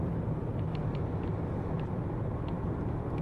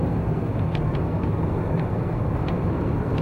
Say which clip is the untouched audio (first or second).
first